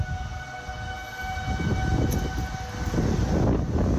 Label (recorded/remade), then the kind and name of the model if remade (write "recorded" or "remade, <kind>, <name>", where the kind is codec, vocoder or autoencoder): recorded